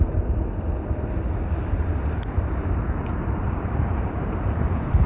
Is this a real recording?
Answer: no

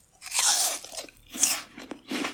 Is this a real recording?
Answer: no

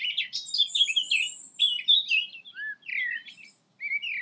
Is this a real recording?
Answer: yes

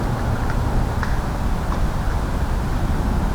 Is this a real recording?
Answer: yes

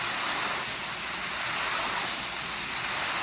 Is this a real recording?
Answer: yes